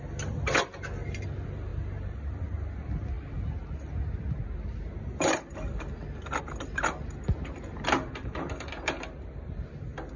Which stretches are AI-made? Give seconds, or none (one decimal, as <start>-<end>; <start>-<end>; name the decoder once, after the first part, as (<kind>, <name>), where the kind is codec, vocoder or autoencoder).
none